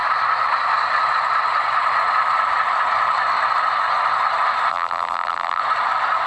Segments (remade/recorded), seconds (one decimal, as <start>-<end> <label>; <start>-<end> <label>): 0.0-4.7 recorded; 4.7-5.6 remade; 5.6-6.3 recorded